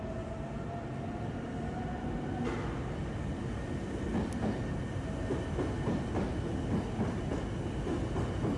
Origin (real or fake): real